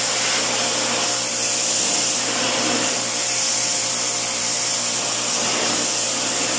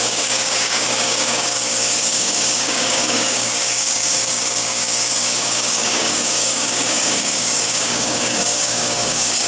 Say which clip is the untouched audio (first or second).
first